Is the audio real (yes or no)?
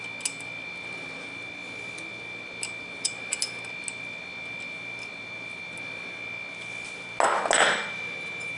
yes